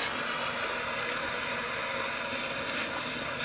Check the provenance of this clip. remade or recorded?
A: recorded